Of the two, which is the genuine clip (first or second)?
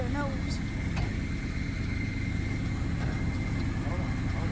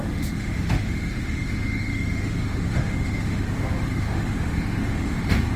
first